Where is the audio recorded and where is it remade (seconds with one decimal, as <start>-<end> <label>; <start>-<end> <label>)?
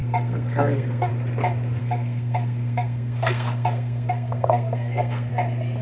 0.0-1.1 remade; 1.1-1.8 recorded; 1.8-5.3 remade; 5.3-5.8 recorded